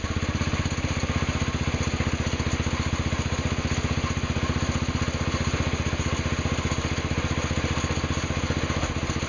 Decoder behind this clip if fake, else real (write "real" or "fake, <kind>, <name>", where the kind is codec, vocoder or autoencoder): real